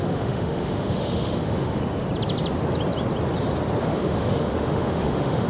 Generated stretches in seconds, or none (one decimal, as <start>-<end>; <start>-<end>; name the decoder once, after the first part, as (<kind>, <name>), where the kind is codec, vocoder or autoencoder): 0.0-1.8 (autoencoder, DAC-VAE); 3.8-5.5